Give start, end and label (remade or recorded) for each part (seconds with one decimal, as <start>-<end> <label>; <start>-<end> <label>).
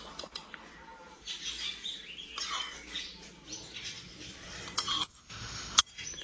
0.0-5.1 recorded; 5.1-5.8 remade; 5.8-6.2 recorded